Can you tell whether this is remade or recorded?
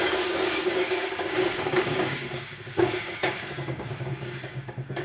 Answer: remade